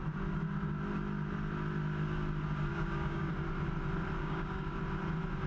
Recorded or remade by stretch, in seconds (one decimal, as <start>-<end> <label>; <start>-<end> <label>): 0.0-2.7 recorded; 2.7-3.3 remade; 3.3-4.2 recorded; 4.2-4.8 remade; 4.8-5.5 recorded

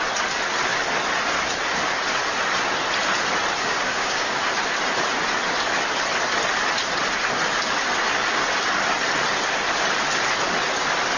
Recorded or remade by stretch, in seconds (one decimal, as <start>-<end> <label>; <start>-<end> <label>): 0.0-3.6 recorded; 3.6-4.4 remade; 4.4-11.2 recorded

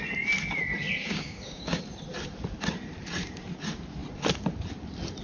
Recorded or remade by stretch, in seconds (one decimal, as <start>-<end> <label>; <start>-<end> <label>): 0.0-1.0 recorded; 1.0-1.8 remade; 1.8-5.2 recorded

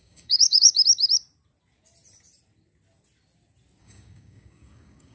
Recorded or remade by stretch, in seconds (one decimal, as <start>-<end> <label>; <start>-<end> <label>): 0.0-0.7 remade; 0.7-3.8 recorded; 3.8-5.1 remade

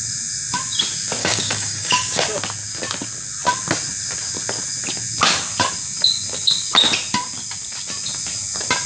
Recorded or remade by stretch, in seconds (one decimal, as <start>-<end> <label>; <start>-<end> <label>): 0.0-1.2 recorded; 1.2-2.2 remade; 2.2-8.9 recorded